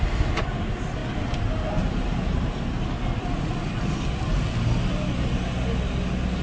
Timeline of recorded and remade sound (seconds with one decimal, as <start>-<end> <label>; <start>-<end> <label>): 0.0-6.4 recorded